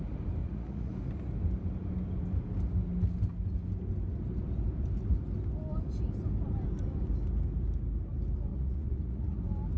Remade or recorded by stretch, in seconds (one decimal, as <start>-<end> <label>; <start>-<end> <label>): 0.0-0.4 recorded; 0.4-0.9 remade; 0.9-8.5 recorded; 8.5-9.4 remade; 9.4-9.8 recorded